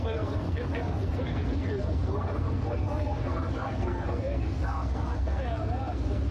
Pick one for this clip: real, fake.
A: fake